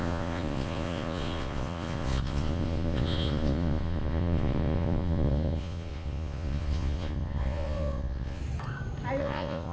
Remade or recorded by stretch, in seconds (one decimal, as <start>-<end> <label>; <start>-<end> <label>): 0.0-8.4 remade; 8.4-9.2 recorded; 9.2-9.7 remade

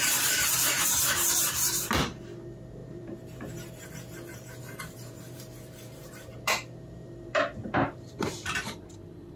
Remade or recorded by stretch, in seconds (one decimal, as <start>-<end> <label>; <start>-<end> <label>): 0.0-9.4 remade

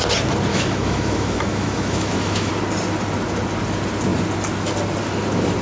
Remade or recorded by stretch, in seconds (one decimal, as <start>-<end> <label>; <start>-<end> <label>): 0.0-0.5 recorded; 0.5-2.5 remade; 2.5-5.6 recorded

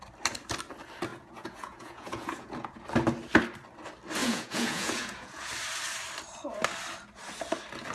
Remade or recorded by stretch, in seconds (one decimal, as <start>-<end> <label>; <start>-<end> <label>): 0.0-1.1 recorded; 1.1-2.8 remade; 2.8-4.2 recorded; 4.2-5.5 remade; 5.5-7.9 recorded